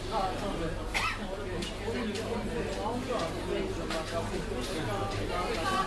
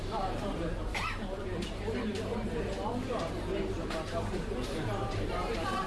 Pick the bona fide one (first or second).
first